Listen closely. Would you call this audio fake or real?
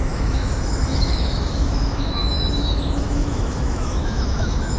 fake